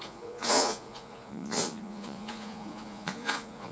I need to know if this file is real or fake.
fake